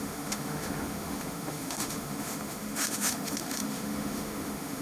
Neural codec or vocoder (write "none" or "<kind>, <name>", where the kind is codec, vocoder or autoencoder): autoencoder, DAC-VAE